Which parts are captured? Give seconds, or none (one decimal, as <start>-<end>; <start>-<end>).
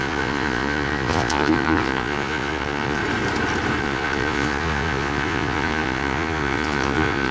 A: 3.0-3.8